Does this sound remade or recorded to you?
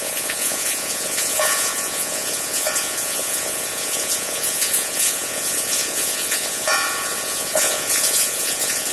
remade